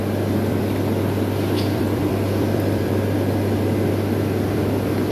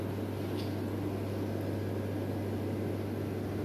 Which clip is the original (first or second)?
second